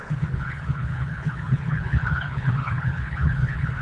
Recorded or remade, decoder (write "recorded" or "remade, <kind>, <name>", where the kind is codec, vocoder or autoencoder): remade, codec, HILCodec